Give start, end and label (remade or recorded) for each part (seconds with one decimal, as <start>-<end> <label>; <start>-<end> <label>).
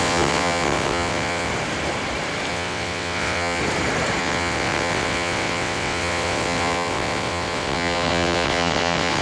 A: 0.0-1.5 remade; 1.5-2.5 recorded; 2.5-3.6 remade; 3.6-4.2 recorded; 4.2-9.2 remade